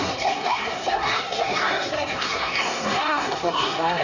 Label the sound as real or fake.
fake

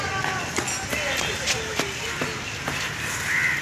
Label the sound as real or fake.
real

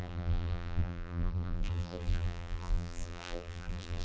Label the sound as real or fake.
fake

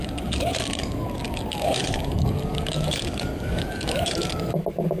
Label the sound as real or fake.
fake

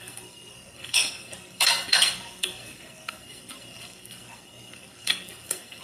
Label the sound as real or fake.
fake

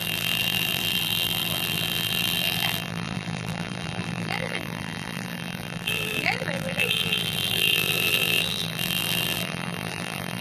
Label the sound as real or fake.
fake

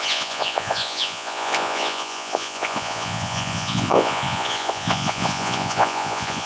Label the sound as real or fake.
fake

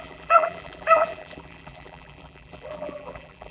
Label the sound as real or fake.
fake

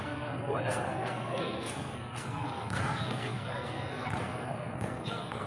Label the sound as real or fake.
fake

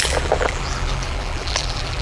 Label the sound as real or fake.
fake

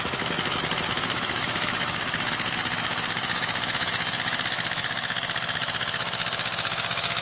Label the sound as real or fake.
fake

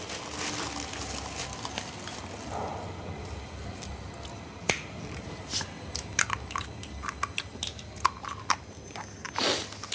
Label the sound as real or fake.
real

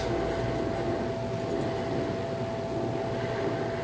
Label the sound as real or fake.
real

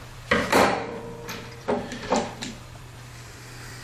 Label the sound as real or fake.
fake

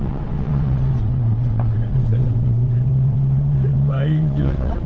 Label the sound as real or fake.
fake